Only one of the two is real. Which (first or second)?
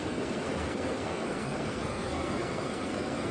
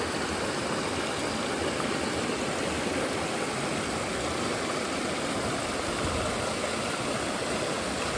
second